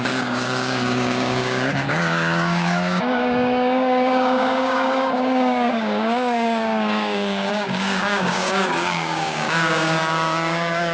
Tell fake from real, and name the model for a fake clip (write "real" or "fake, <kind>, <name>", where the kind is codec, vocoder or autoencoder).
fake, codec, DAC